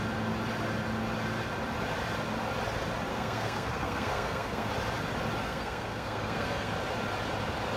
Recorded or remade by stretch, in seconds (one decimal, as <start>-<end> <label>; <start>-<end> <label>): 0.0-3.1 recorded; 3.1-4.7 remade; 4.7-5.4 recorded; 5.4-6.7 remade; 6.7-7.8 recorded